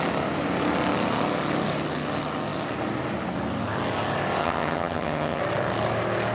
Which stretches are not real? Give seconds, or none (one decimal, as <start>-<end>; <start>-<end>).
4.4-5.4